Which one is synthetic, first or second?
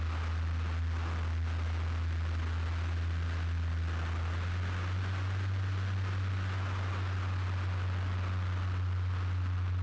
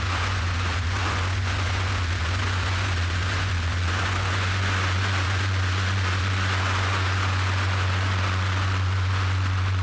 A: second